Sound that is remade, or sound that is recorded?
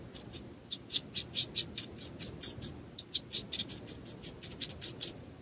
recorded